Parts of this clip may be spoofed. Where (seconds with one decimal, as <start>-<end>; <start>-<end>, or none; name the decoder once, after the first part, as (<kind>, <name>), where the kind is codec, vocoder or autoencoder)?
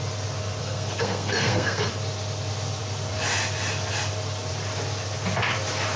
0.6-1.9 (codec, SNAC)